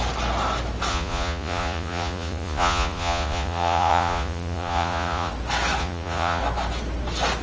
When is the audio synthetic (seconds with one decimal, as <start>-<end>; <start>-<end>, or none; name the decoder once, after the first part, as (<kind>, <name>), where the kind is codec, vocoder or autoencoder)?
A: 0.9-5.3 (vocoder, Vocos); 5.8-6.4